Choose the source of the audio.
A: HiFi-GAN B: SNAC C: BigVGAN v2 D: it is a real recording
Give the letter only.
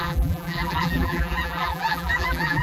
C